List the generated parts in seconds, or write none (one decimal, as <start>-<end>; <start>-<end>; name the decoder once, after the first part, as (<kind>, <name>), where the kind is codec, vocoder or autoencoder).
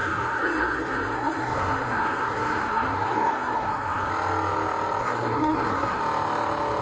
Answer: 0.0-4.1 (codec, SNAC); 5.0-6.0